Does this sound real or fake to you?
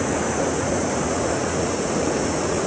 fake